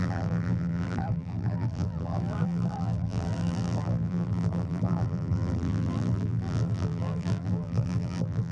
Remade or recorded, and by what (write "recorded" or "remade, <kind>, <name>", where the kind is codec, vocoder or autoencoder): remade, vocoder, BigVGAN v2